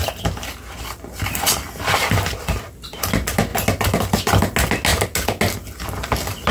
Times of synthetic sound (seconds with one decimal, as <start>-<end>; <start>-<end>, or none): none